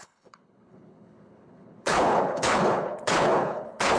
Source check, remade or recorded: remade